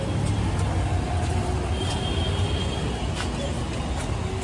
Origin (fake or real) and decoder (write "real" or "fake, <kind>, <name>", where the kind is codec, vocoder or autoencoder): real